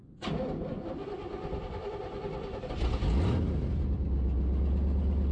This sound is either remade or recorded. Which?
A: recorded